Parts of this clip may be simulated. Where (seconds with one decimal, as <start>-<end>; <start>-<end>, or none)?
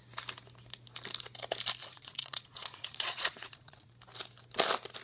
1.8-3.9